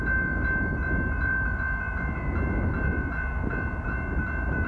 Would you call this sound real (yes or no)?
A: yes